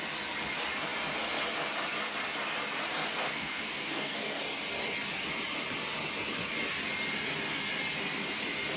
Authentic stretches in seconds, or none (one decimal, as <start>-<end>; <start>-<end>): 0.0-3.1; 4.4-8.8